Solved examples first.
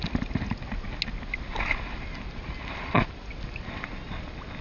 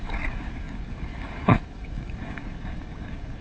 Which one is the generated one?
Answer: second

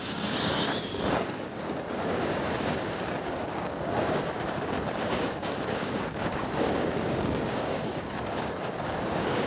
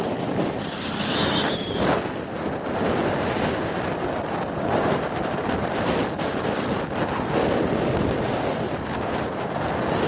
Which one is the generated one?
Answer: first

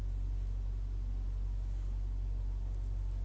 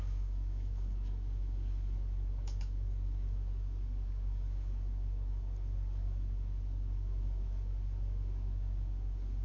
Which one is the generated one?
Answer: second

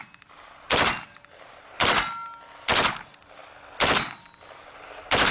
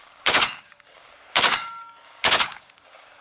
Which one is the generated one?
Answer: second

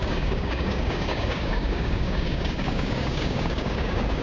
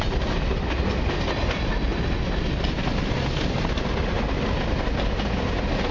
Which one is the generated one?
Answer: first